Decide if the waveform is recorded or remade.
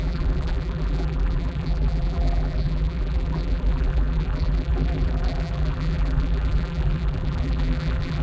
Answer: remade